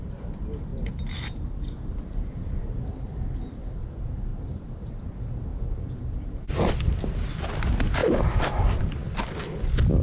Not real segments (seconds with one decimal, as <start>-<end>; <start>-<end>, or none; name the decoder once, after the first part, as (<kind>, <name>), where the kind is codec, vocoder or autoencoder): 0.7-1.4 (vocoder, BigVGAN v2); 4.3-4.9